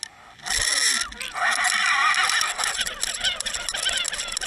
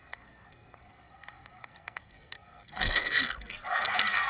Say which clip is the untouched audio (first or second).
first